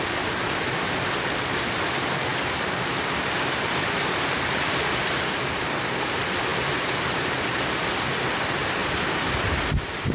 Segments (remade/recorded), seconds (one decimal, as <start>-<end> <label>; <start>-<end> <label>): 0.0-6.5 recorded; 6.5-8.2 remade; 8.2-8.8 recorded; 8.8-9.3 remade; 9.3-10.1 recorded